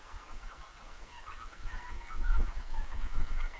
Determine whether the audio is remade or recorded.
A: remade